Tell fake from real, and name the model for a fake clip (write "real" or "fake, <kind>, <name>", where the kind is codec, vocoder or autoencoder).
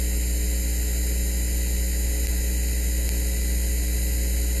real